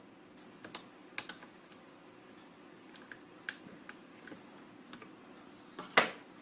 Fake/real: real